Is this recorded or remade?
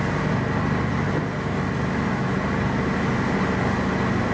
recorded